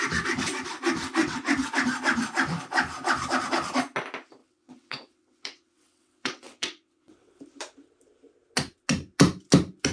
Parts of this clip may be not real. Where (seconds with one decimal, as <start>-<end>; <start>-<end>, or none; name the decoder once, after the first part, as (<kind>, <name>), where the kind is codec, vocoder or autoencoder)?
1.2-1.7 (vocoder, WaveNeXt); 4.4-7.4